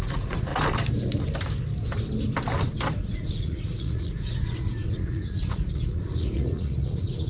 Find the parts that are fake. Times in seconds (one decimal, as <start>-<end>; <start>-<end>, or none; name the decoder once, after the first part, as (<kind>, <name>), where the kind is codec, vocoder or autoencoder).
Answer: 0.0-0.5 (vocoder, Vocos); 3.0-7.3